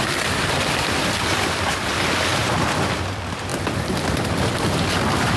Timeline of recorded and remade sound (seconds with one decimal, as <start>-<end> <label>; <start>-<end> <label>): 0.0-3.5 remade; 3.5-4.5 recorded; 4.5-5.4 remade